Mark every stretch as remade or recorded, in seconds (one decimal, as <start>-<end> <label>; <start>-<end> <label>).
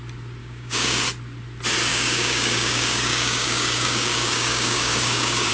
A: 0.0-0.4 recorded; 0.4-1.0 remade; 1.0-1.9 recorded; 1.9-5.5 remade